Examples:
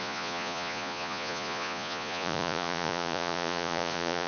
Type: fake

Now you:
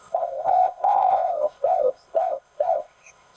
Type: fake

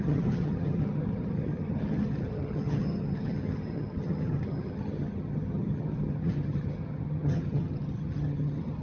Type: fake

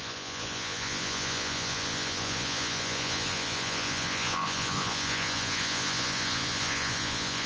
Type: fake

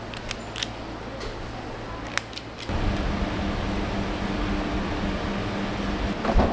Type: real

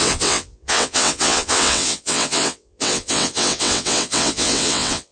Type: fake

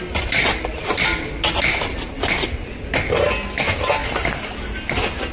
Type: real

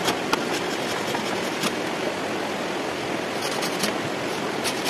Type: real